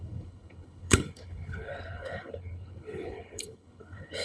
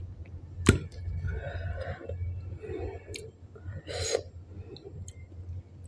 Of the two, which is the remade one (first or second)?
first